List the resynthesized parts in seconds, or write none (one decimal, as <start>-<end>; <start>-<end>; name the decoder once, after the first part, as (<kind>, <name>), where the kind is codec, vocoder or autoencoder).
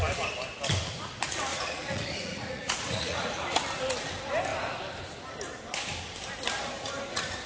1.5-3.6 (vocoder, Vocos)